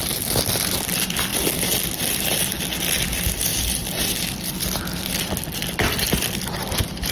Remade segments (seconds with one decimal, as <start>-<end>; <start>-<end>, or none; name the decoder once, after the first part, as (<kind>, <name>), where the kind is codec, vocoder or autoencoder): none